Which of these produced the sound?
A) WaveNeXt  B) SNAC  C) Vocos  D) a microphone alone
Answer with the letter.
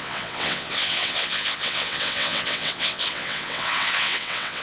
A